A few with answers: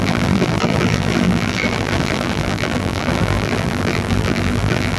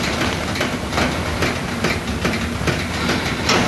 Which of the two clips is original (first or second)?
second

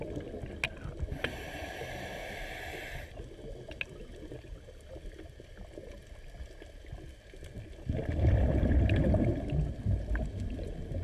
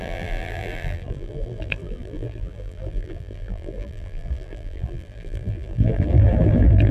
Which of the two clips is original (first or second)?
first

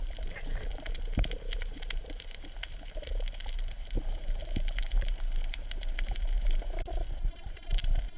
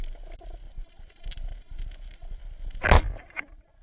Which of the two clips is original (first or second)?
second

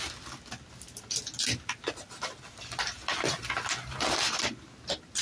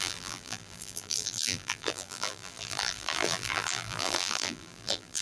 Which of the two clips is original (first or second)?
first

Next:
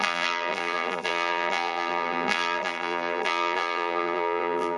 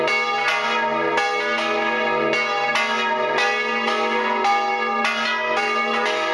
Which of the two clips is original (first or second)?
second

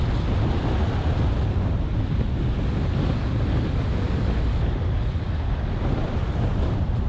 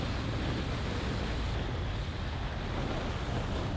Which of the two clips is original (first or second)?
second